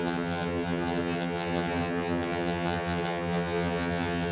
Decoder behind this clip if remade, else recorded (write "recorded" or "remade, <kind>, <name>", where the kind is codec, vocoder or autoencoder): remade, vocoder, HiFi-GAN